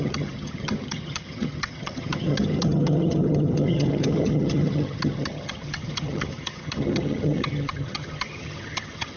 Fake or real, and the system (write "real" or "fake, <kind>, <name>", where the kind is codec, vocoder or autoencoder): fake, vocoder, HiFi-GAN